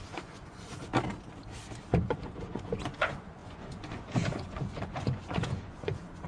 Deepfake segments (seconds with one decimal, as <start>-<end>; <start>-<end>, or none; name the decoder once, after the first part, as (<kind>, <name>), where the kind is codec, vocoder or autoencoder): 0.0-0.9 (vocoder, Vocos); 1.9-6.3